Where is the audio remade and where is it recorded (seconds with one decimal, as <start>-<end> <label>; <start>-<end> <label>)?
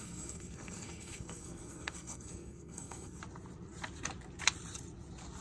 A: 0.0-3.2 remade; 3.2-5.4 recorded